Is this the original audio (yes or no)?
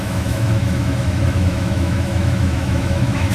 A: no